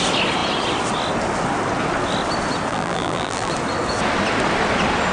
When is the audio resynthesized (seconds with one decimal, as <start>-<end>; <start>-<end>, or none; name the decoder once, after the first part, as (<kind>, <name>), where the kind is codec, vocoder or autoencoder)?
2.7-3.5 (vocoder, BigVGAN v2)